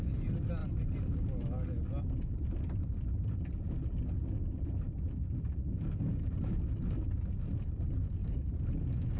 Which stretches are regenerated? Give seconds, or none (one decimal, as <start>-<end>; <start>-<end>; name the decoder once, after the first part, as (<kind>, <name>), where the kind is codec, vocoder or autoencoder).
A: none